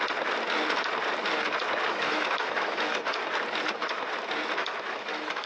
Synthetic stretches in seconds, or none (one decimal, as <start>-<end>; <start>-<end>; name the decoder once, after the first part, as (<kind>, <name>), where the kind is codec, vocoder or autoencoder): 1.9-3.2 (autoencoder, DAC-VAE); 4.6-5.5